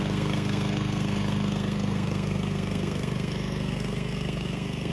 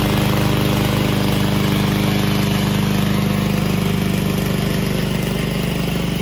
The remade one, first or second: first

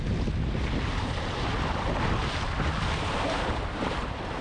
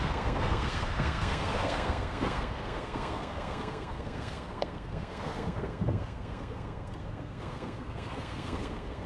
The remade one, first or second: second